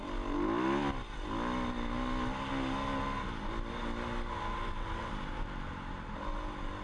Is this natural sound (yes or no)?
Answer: yes